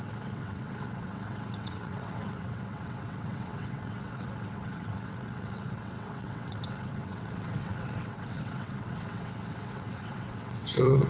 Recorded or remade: remade